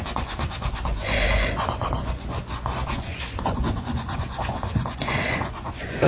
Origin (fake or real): fake